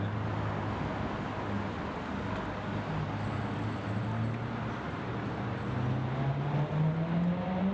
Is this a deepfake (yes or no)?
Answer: no